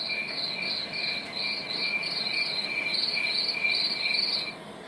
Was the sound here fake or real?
real